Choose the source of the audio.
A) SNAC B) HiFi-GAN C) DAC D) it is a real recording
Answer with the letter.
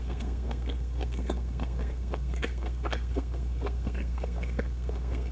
A